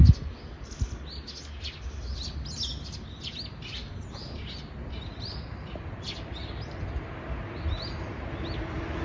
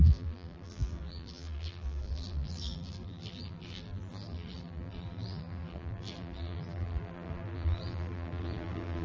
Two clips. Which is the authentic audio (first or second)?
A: first